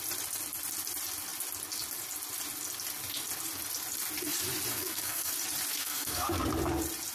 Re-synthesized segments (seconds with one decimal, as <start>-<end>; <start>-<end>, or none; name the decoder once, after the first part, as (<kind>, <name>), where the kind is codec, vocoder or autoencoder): 4.7-5.3 (codec, SNAC); 5.8-6.4